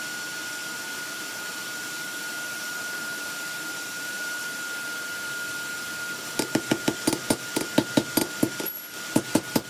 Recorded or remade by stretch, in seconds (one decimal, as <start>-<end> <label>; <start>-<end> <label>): 0.0-0.6 recorded; 0.6-4.6 remade; 4.6-9.7 recorded